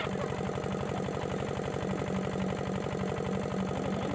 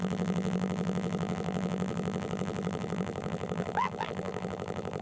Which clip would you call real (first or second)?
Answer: first